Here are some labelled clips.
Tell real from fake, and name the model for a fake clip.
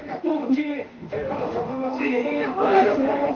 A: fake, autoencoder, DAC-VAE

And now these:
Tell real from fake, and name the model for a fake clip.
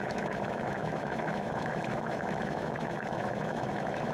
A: fake, autoencoder, DAC-VAE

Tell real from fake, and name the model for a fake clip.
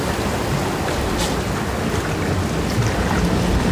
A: real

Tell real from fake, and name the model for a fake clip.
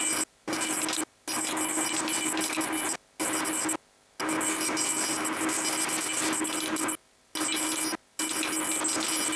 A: real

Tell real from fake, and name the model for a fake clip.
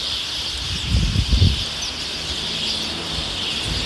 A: real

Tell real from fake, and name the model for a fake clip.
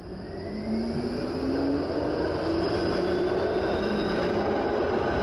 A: real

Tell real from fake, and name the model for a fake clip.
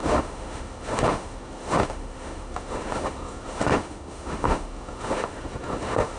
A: fake, autoencoder, DAC-VAE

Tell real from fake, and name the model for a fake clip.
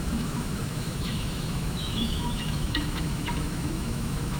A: fake, autoencoder, DAC-VAE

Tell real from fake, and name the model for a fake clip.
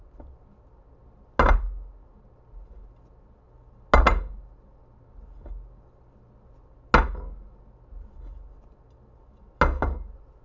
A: real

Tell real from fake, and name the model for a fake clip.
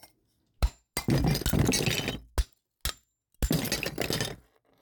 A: real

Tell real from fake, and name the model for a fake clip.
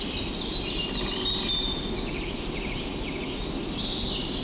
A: real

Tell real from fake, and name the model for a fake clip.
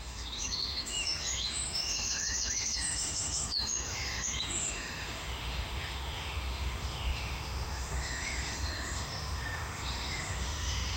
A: fake, autoencoder, DAC-VAE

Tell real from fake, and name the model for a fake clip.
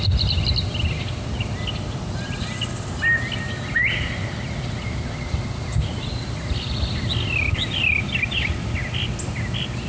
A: real